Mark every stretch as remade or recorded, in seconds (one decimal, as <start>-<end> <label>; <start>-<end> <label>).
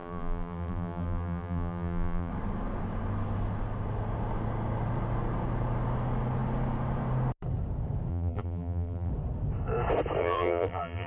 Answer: 0.0-2.3 remade; 2.3-8.1 recorded; 8.1-9.1 remade; 9.1-10.2 recorded; 10.2-11.1 remade